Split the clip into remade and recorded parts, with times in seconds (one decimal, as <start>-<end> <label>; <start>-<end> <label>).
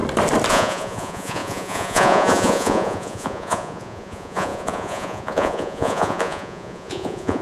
0.0-0.5 recorded; 0.5-7.4 remade